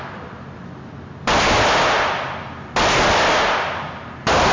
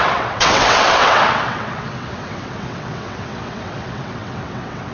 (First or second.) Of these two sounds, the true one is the first